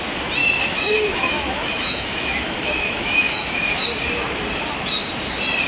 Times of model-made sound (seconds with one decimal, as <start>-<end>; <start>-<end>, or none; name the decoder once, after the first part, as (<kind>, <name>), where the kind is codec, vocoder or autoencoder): 0.4-3.8 (autoencoder, DAC-VAE)